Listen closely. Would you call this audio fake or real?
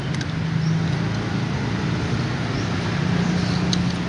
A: real